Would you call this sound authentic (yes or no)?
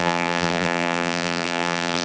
no